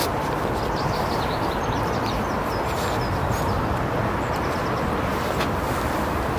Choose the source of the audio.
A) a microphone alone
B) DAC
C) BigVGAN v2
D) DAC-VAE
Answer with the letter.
A